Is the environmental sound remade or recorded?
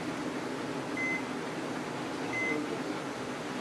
recorded